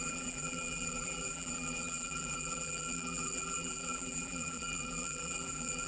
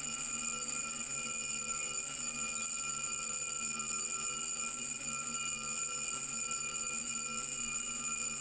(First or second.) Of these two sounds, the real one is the second